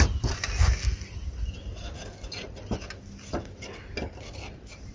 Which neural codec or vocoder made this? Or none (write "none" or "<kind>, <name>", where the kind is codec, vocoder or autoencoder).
none